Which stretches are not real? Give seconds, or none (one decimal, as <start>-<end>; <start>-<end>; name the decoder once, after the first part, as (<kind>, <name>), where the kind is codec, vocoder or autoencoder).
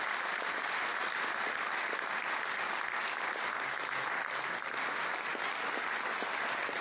none